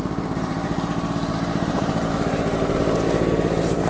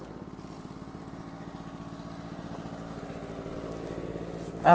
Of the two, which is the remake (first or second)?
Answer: first